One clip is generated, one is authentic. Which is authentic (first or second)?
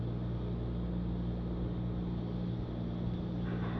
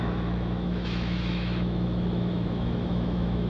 first